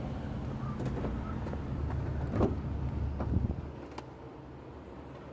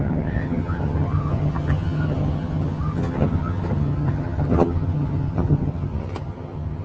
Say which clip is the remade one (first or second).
second